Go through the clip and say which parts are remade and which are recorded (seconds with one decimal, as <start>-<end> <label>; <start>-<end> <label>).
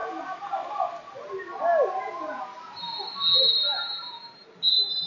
0.0-5.1 recorded